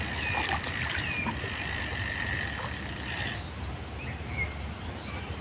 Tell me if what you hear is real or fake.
real